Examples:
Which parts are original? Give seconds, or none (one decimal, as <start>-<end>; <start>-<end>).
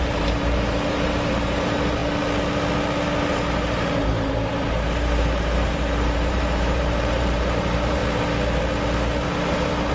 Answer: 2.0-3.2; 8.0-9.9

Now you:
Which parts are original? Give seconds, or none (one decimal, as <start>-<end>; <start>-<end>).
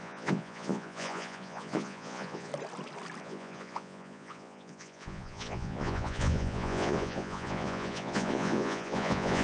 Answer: 2.5-3.2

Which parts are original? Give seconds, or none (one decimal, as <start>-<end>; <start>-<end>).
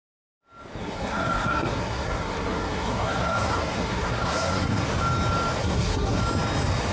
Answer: 0.0-0.8; 4.9-5.6; 6.2-6.9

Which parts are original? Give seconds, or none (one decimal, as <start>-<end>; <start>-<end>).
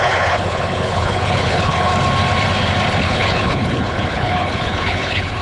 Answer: 1.9-3.0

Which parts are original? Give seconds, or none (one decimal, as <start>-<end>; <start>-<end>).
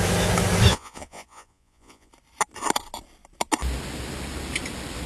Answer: 0.0-0.7; 2.1-5.1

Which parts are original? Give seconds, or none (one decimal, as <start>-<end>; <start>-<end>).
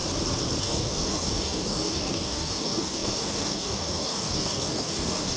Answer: 0.0-0.6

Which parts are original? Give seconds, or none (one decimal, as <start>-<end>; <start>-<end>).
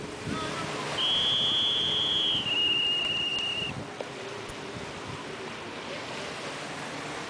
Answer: 0.0-7.3